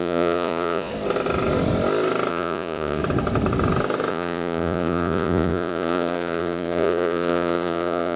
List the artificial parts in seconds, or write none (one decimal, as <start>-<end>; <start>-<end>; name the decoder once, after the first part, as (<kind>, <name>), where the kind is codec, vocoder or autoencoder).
0.0-0.9 (vocoder, Vocos); 2.3-3.0; 4.1-8.2